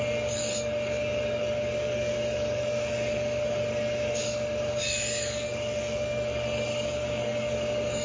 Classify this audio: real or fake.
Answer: fake